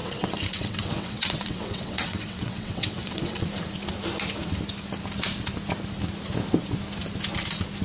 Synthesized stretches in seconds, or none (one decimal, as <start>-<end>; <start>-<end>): 0.0-3.5